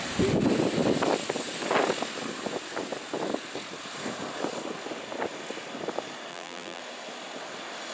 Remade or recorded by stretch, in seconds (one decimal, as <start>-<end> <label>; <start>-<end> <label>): 0.0-6.3 recorded; 6.3-6.8 remade; 6.8-7.9 recorded